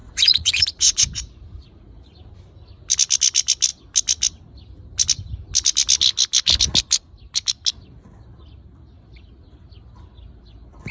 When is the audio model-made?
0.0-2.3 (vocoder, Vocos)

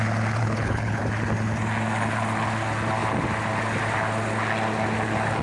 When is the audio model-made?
0.4-1.0 (codec, HILCodec)

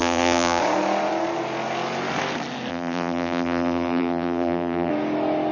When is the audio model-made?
0.0-0.6 (vocoder, BigVGAN v2); 2.7-4.9

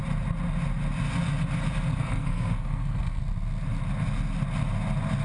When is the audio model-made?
1.9-3.2 (codec, SNAC)

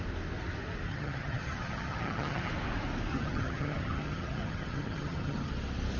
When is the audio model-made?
0.9-2.5 (vocoder, HiFi-GAN); 3.1-5.5

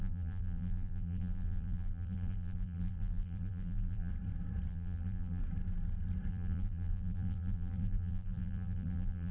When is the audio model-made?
0.0-4.1 (vocoder, BigVGAN v2); 4.7-5.4; 6.3-9.3

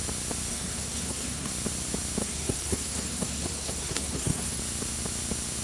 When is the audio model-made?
0.5-1.5 (codec, SNAC); 2.2-4.6

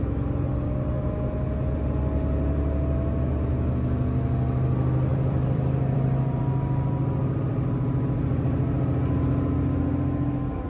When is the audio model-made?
5.1-6.4 (vocoder, BigVGAN v2)